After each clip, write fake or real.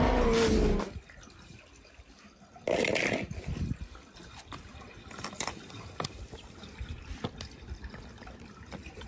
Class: real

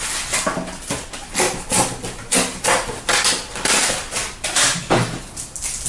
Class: real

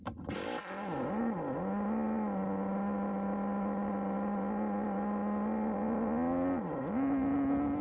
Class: real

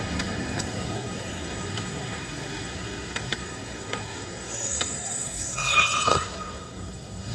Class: fake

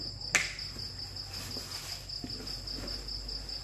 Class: real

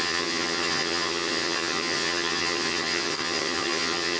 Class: fake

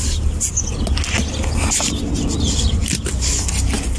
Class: real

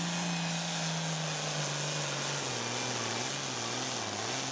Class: real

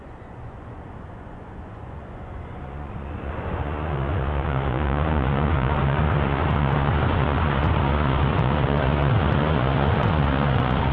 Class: fake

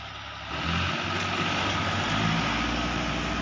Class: real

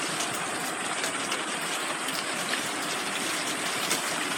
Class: fake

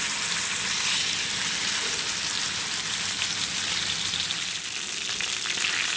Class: real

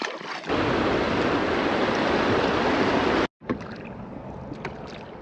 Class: real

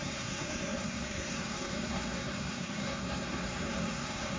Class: fake